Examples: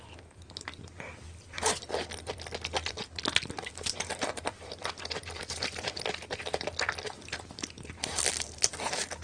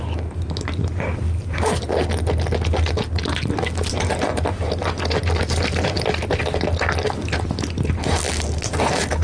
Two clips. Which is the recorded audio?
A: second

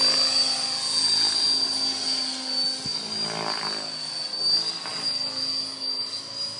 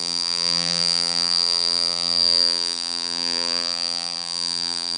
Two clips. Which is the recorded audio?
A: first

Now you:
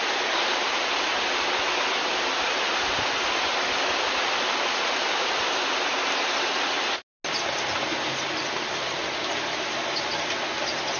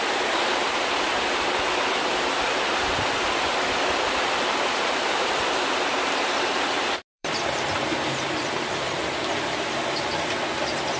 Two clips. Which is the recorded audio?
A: first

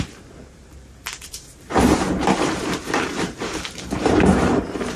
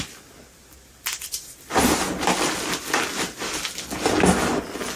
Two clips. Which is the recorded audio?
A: second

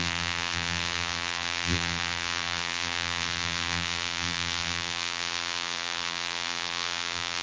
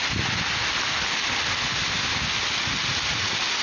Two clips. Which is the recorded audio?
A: second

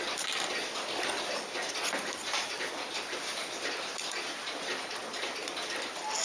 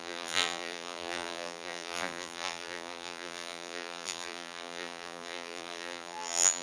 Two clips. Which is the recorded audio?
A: first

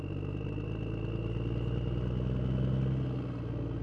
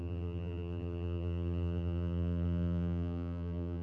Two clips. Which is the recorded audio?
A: first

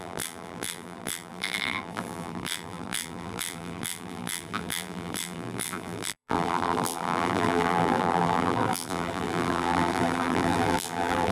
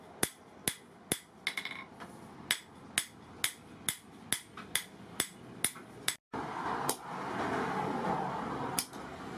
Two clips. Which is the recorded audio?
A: second